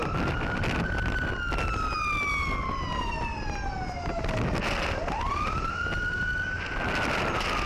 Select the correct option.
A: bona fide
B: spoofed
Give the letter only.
A